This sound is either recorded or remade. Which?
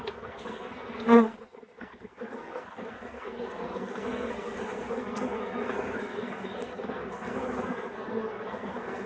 remade